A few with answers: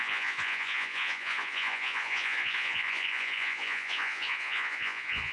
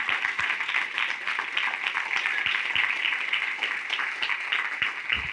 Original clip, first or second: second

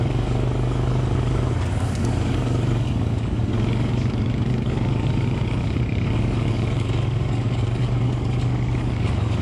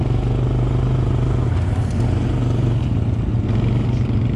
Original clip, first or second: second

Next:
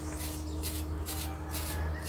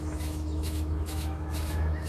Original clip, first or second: first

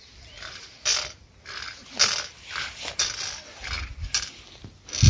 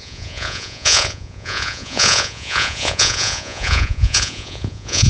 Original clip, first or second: first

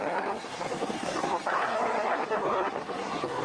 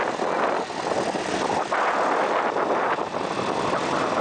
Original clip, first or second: second